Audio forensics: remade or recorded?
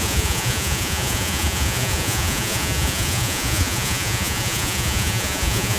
remade